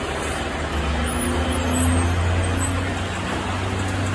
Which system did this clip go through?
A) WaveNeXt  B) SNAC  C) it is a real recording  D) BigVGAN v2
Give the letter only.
C